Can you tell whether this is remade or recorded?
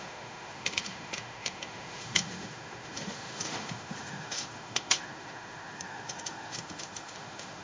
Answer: remade